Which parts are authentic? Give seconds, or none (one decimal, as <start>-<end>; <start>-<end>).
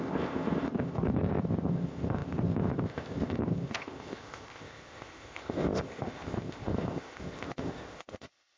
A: none